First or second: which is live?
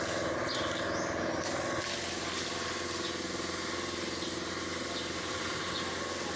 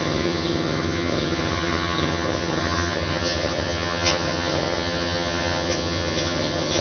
first